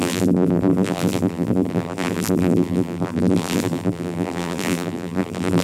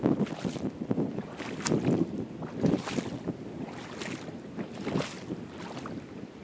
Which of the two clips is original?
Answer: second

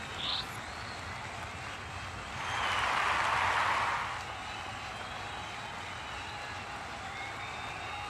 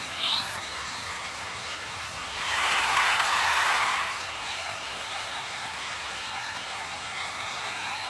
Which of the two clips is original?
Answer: first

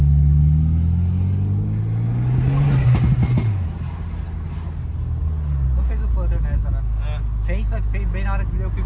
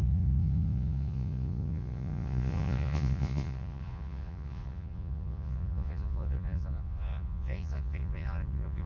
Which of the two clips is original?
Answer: first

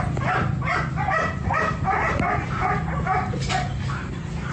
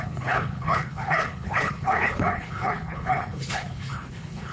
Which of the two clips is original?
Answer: first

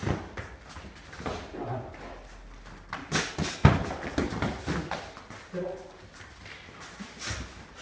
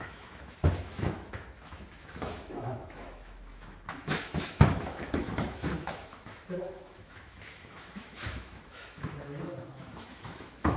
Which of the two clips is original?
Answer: first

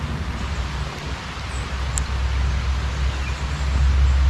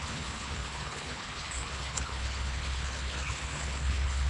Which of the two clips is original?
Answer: first